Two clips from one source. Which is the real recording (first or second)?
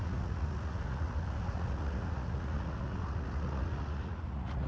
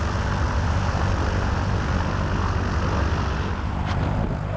second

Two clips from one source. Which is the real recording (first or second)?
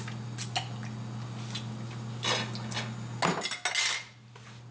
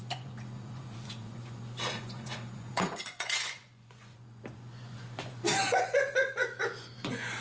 first